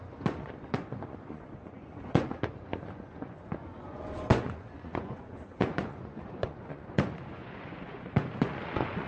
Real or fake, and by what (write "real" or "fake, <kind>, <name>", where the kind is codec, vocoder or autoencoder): fake, vocoder, Vocos